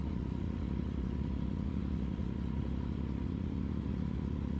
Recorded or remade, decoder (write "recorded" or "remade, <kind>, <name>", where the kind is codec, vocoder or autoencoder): remade, vocoder, Vocos